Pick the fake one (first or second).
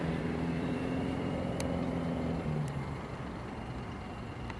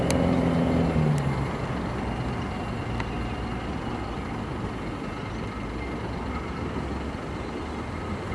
first